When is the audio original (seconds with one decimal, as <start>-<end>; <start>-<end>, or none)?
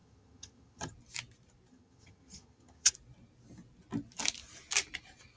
0.9-1.7; 2.9-5.4